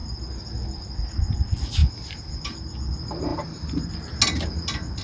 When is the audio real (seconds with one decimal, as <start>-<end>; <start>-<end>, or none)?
0.0-3.3; 3.9-5.0

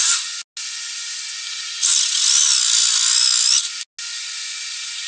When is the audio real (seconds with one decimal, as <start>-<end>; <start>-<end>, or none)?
0.0-5.1